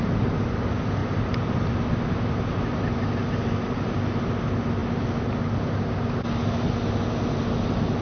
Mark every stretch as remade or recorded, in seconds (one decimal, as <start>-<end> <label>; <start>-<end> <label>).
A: 0.0-8.0 recorded